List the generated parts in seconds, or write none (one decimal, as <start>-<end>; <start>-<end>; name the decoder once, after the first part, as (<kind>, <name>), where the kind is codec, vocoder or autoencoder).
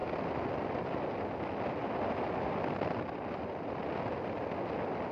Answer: none